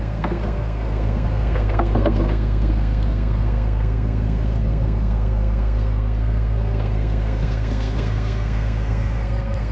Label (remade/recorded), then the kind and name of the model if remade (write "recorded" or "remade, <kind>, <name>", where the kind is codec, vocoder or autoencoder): remade, codec, SNAC